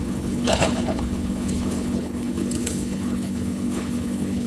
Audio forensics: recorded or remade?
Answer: remade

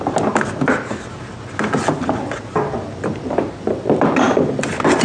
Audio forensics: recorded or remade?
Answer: recorded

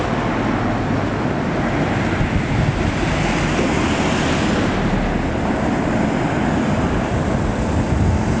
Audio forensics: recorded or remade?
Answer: recorded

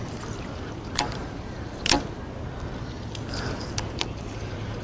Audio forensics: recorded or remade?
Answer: remade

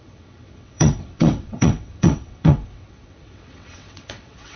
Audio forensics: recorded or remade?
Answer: remade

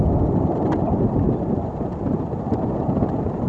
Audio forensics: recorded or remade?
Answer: recorded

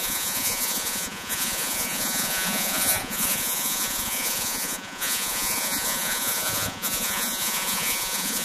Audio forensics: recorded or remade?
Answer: remade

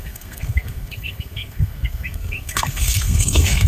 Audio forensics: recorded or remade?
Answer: remade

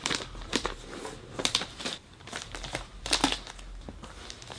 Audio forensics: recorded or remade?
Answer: recorded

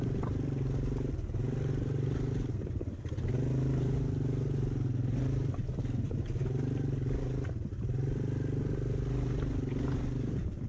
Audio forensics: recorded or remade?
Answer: recorded